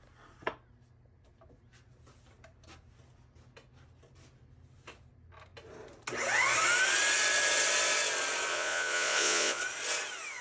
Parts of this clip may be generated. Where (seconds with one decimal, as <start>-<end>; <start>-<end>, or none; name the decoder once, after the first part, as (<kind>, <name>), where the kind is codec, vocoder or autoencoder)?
8.5-9.6 (vocoder, Vocos)